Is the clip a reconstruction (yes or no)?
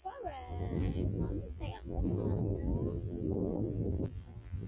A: yes